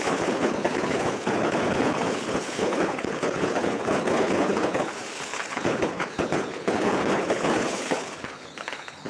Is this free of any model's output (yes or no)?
no